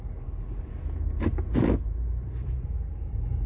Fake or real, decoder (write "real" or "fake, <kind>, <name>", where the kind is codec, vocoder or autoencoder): fake, vocoder, BigVGAN v2